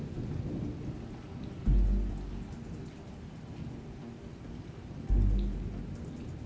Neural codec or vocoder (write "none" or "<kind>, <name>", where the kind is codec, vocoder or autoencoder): none